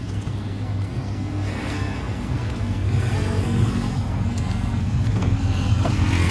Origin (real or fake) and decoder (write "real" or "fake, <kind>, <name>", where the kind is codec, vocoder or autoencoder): fake, codec, SNAC